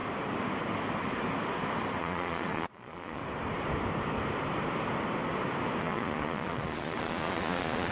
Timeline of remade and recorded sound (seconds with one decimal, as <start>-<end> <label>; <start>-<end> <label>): 0.0-2.0 recorded; 2.0-3.2 remade; 3.2-5.8 recorded; 5.8-7.9 remade

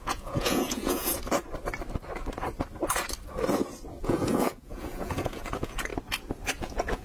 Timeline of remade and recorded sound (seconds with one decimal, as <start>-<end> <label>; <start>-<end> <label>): 0.0-1.1 remade; 1.1-4.0 recorded; 4.0-5.9 remade; 5.9-6.6 recorded; 6.6-7.0 remade

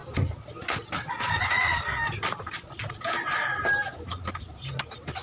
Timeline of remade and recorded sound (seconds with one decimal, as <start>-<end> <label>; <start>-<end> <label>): 0.0-5.2 recorded

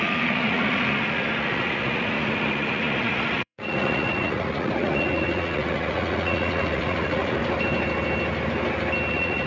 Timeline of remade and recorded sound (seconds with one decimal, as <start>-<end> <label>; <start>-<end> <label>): 0.0-7.4 remade; 7.4-9.1 recorded; 9.1-9.5 remade